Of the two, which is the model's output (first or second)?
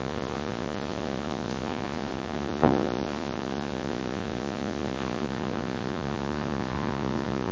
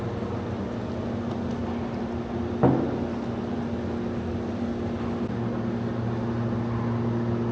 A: first